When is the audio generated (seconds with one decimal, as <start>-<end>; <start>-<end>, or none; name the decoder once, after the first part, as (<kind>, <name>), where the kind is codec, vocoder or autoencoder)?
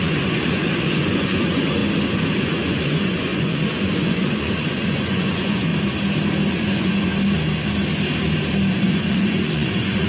0.0-1.8 (vocoder, Vocos); 2.4-5.7; 6.5-7.1; 8.7-10.1